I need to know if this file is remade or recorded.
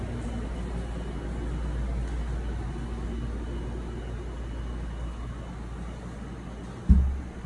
recorded